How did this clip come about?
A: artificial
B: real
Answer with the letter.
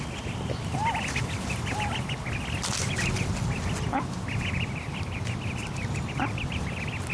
B